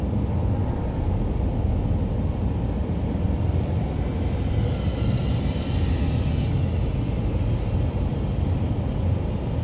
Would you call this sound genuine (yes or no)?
yes